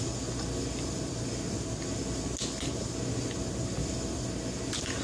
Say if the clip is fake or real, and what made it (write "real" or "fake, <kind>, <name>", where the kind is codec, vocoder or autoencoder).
real